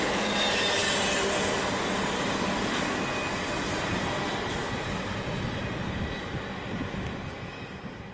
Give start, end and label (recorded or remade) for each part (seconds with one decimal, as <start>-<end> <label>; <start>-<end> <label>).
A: 0.0-8.1 recorded

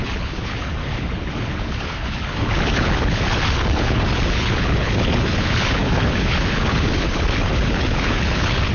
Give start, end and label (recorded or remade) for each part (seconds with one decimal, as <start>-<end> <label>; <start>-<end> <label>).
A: 0.0-8.7 remade

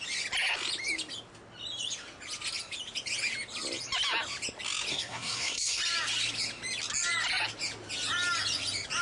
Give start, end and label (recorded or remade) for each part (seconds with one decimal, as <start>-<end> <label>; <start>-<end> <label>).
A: 0.0-4.9 recorded; 4.9-5.8 remade; 5.8-9.0 recorded

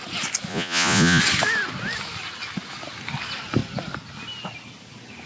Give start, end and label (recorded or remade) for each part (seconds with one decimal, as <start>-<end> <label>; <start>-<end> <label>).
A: 0.0-0.5 recorded; 0.5-1.2 remade; 1.2-5.3 recorded

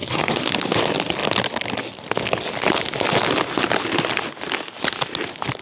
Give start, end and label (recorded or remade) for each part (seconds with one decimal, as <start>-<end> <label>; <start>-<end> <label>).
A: 0.0-0.5 remade; 0.5-5.6 recorded

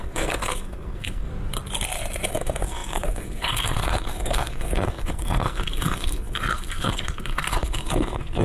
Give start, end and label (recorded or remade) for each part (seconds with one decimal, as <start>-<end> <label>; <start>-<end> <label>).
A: 0.0-1.3 remade; 1.3-2.3 recorded; 2.3-8.4 remade